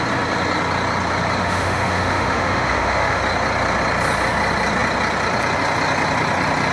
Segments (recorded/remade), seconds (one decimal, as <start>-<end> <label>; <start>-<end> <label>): 0.0-1.4 recorded; 1.4-3.2 remade; 3.2-6.7 recorded